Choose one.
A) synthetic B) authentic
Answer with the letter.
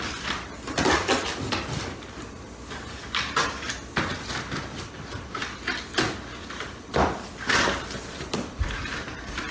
B